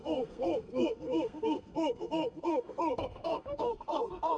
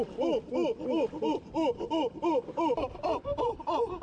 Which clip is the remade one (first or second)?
first